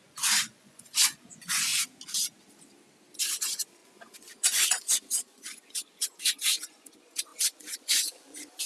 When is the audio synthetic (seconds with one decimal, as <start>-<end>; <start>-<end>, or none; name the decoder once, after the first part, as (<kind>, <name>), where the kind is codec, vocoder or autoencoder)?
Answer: 0.0-1.7 (vocoder, Vocos); 3.2-8.7